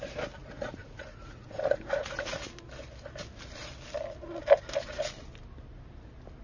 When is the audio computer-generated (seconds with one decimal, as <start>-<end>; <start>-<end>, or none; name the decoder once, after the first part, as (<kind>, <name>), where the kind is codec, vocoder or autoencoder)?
0.4-2.5 (vocoder, Vocos)